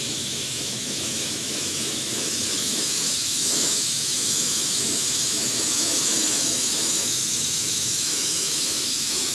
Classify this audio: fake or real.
fake